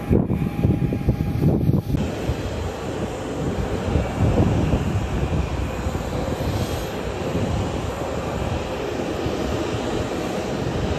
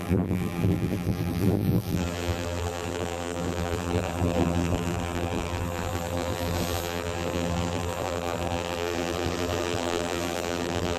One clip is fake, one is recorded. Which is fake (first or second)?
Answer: second